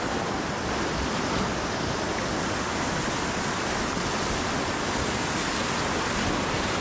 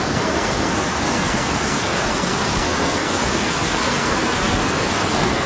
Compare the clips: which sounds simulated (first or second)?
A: second